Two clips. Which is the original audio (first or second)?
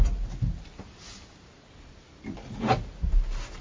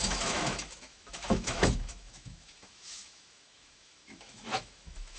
first